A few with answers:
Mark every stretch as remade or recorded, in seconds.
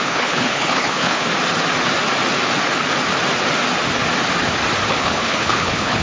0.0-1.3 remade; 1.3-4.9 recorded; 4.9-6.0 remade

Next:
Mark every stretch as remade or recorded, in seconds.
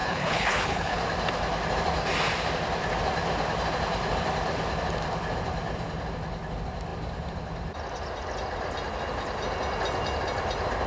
0.0-1.0 remade; 1.0-10.9 recorded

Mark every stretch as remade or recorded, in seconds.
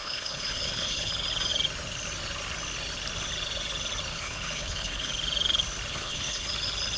0.0-1.1 remade; 1.1-4.1 recorded; 4.1-5.1 remade; 5.1-5.9 recorded; 5.9-6.5 remade; 6.5-7.0 recorded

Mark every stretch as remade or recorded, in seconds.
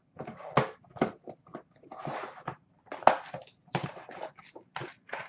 0.0-5.3 recorded